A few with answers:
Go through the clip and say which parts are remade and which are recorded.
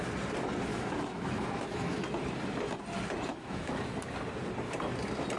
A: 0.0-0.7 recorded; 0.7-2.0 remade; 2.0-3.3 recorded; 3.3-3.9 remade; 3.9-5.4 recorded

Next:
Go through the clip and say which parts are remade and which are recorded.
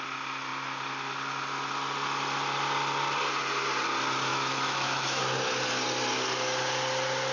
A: 0.0-4.3 recorded; 4.3-5.2 remade; 5.2-7.3 recorded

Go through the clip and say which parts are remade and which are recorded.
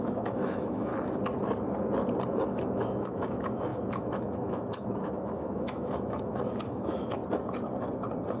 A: 0.0-0.9 remade; 0.9-2.5 recorded; 2.5-7.2 remade; 7.2-8.4 recorded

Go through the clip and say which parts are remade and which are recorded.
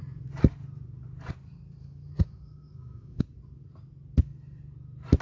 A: 0.0-1.8 recorded; 1.8-3.2 remade; 3.2-5.2 recorded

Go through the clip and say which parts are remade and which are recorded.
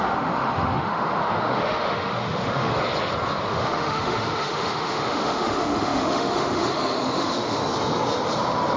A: 0.0-2.7 remade; 2.7-3.5 recorded; 3.5-7.6 remade; 7.6-8.8 recorded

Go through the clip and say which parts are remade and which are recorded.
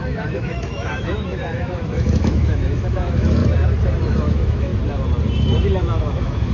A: 0.0-3.4 remade; 3.4-4.0 recorded; 4.0-4.7 remade; 4.7-5.6 recorded; 5.6-6.5 remade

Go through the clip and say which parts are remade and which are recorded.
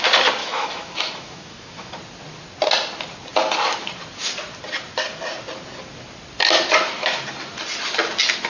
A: 0.0-0.4 recorded; 0.4-1.9 remade; 1.9-8.5 recorded